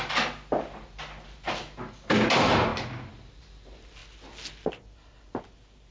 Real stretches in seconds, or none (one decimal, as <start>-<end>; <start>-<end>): 0.0-5.9